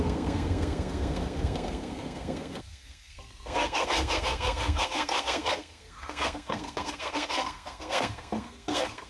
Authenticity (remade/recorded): remade